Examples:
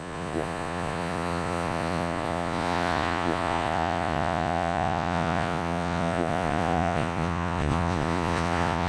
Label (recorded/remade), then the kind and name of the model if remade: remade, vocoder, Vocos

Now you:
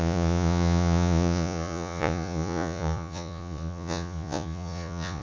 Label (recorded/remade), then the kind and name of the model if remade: remade, vocoder, Vocos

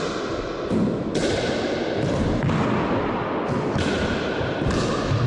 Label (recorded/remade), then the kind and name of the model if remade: recorded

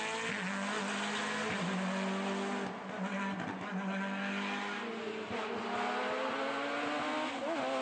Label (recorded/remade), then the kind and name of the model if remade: recorded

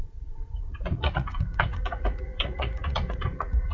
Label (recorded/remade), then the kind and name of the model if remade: remade, vocoder, Vocos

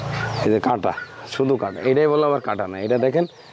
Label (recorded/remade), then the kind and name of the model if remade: recorded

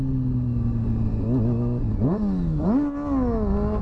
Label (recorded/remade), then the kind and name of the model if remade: recorded